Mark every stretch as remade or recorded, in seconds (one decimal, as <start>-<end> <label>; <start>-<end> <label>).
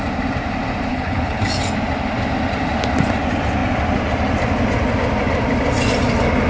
0.0-0.9 recorded; 0.9-1.4 remade; 1.4-6.5 recorded